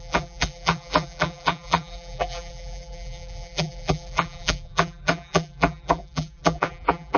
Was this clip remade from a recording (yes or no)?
yes